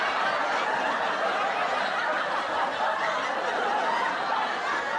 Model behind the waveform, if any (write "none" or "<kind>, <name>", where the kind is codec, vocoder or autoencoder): none